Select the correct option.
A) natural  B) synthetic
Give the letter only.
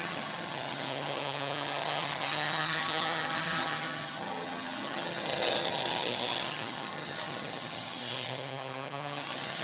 B